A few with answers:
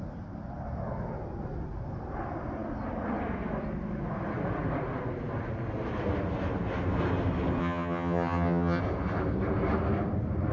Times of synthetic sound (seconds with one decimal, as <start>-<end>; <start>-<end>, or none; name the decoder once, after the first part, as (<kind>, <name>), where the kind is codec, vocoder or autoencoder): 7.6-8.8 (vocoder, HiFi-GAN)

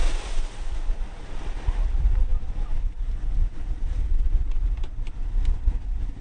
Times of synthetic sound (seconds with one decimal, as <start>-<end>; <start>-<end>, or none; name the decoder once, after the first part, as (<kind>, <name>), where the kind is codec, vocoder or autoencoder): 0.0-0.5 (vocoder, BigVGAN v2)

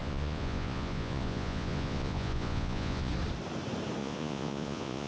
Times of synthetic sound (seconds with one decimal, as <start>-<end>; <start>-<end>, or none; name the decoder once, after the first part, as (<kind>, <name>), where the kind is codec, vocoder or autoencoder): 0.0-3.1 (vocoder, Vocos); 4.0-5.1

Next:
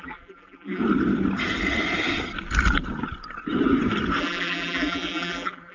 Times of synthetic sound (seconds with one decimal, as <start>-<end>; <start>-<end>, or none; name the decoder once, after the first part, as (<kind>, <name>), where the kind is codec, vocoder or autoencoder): 0.0-0.8 (vocoder, BigVGAN v2); 4.2-5.7